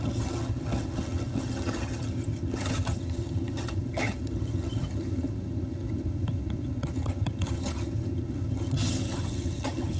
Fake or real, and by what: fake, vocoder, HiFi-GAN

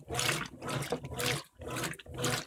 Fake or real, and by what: real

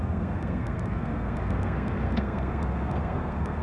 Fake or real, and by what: fake, codec, SNAC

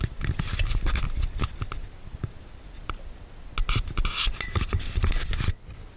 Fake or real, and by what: real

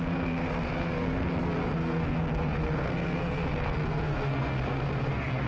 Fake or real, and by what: fake, codec, SNAC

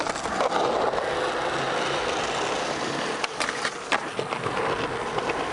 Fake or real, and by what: real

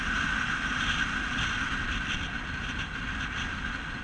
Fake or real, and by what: real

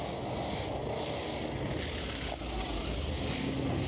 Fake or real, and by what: real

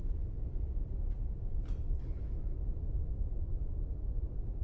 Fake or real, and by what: real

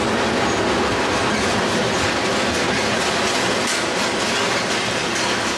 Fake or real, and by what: real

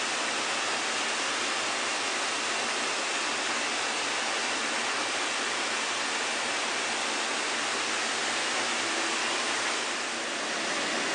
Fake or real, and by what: real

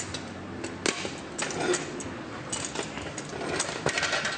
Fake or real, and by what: real